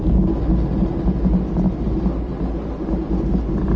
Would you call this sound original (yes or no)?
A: yes